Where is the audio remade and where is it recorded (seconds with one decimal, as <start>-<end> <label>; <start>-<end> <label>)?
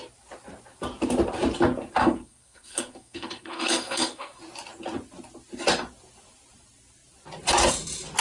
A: 0.0-2.0 recorded; 2.0-4.4 remade; 4.4-8.2 recorded